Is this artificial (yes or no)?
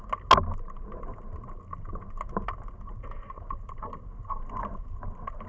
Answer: no